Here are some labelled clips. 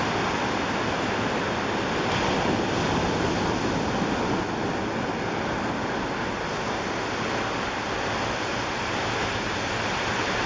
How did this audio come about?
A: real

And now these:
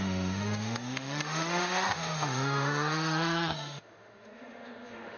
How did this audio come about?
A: fake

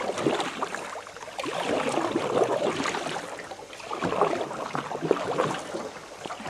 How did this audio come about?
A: real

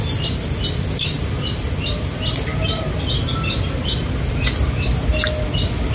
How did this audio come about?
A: real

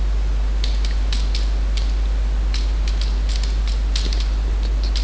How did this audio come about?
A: real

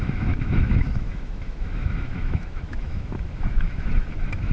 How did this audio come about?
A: fake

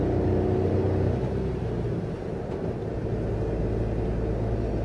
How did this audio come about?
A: real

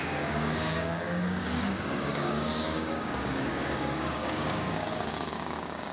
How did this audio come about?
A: fake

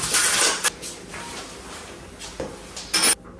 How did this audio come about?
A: real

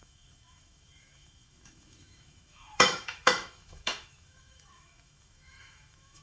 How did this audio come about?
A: fake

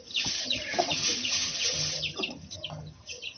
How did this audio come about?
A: fake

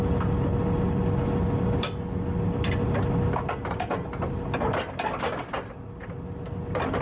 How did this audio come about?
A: real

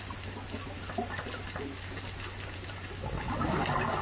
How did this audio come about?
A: real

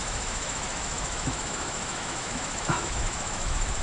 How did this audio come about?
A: fake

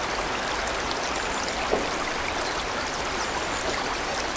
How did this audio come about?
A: real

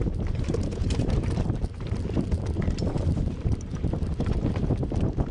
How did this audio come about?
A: fake